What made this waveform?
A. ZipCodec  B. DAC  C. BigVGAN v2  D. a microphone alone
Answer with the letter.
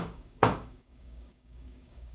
B